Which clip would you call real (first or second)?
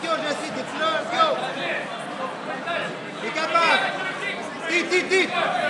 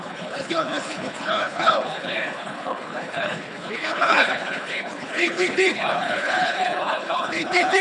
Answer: first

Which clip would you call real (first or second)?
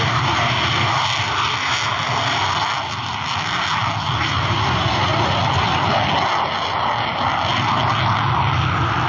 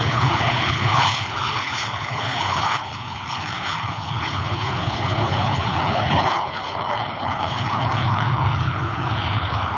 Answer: first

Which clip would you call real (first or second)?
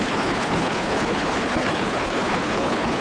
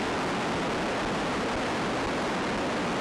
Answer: second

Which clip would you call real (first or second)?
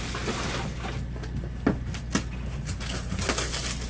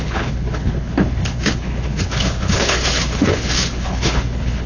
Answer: first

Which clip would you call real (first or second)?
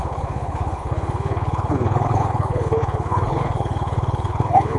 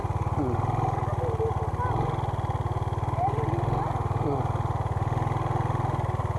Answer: second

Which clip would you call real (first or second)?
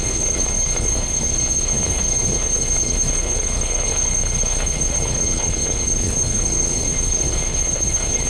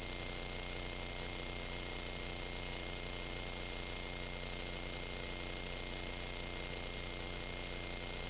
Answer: second